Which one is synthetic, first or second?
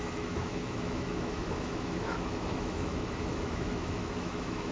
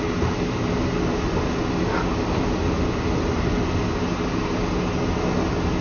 first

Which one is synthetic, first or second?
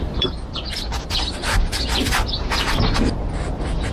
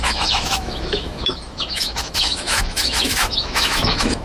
second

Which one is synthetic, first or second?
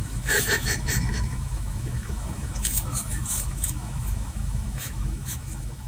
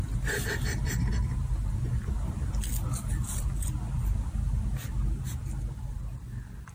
first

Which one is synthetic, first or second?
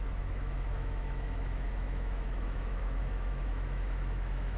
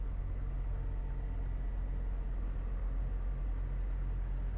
first